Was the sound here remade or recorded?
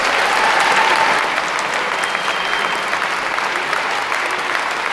recorded